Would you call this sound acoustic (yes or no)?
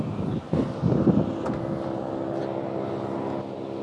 yes